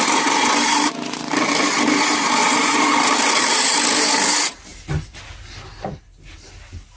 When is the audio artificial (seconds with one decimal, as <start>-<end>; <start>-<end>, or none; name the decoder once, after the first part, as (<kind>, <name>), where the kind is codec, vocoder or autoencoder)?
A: 2.4-3.3 (vocoder, BigVGAN v2)